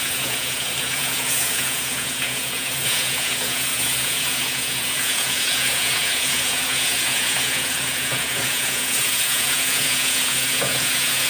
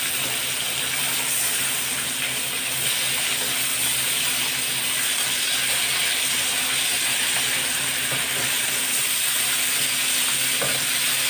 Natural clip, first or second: second